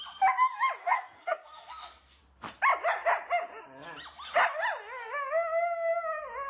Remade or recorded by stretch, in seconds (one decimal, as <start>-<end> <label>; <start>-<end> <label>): 0.0-0.8 recorded; 0.8-2.2 remade; 2.2-6.5 recorded